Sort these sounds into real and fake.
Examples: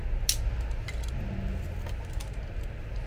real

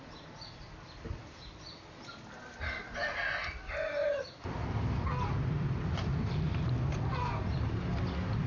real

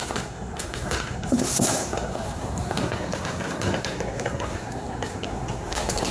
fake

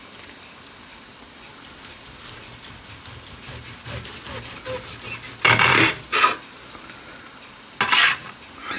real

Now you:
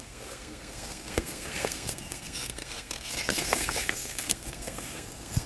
fake